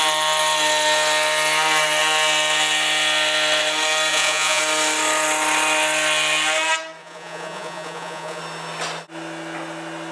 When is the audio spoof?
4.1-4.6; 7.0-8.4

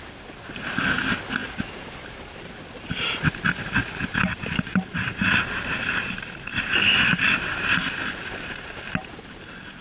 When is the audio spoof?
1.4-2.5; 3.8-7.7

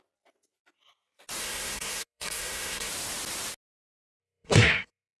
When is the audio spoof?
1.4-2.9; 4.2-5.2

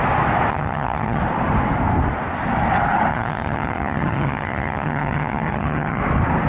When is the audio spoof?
0.5-1.2; 3.1-6.0

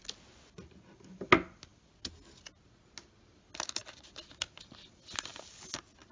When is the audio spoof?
none